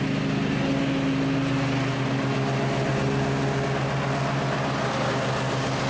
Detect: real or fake real